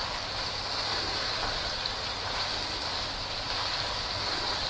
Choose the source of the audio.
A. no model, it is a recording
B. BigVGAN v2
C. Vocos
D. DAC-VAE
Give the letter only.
A